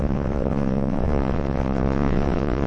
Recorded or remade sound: remade